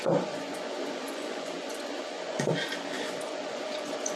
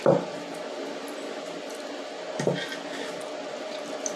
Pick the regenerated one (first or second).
first